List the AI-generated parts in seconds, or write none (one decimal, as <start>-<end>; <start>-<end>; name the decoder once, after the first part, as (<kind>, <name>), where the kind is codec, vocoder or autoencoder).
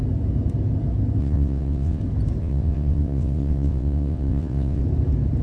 1.2-2.0 (vocoder, WaveNeXt); 2.4-4.8